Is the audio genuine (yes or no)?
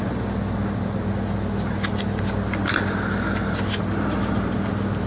yes